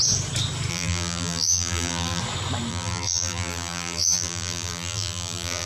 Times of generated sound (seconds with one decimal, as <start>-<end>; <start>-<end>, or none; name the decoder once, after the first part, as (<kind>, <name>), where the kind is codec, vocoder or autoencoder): 0.7-2.2 (vocoder, BigVGAN v2); 2.7-5.7